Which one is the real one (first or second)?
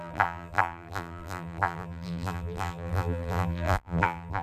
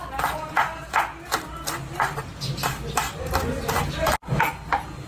second